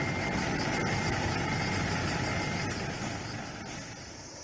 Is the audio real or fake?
real